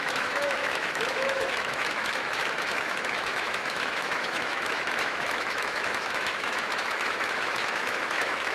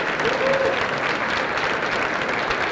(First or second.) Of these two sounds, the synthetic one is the first